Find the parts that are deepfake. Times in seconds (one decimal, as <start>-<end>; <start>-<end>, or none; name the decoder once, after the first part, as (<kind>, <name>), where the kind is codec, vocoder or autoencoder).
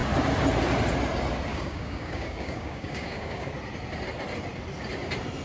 1.5-3.5 (codec, DAC)